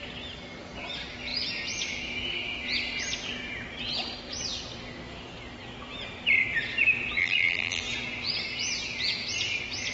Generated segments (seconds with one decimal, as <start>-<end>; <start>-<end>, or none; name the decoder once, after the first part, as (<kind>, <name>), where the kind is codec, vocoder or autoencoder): 7.2-7.8 (vocoder, BigVGAN v2)